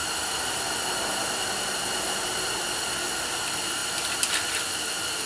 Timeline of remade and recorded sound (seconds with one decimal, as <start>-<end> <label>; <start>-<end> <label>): 0.0-5.3 recorded